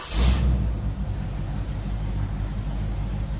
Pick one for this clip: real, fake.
real